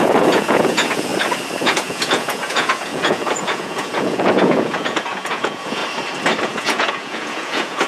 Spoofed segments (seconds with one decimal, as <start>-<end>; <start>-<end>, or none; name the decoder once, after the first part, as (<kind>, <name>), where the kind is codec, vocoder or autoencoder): 0.0-1.1 (vocoder, Vocos); 1.6-5.8; 6.4-7.9